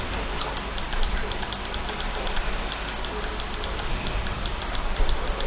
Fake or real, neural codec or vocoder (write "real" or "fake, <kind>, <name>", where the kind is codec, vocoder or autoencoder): real